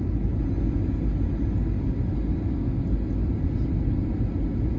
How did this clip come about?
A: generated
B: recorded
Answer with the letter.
B